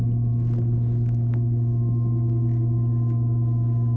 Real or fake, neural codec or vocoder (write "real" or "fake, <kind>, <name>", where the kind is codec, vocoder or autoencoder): real